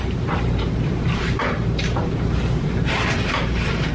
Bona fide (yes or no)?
no